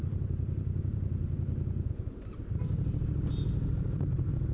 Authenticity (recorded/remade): remade